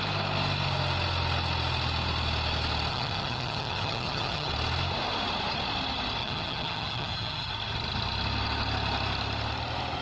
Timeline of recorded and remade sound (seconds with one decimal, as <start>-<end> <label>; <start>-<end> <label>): 0.0-2.9 recorded; 2.9-4.5 remade; 4.5-6.2 recorded; 6.2-7.5 remade; 7.5-10.0 recorded